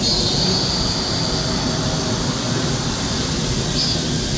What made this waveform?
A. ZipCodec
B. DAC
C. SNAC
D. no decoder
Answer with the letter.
D